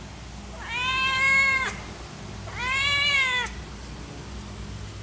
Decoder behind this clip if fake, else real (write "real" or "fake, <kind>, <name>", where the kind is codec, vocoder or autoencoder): real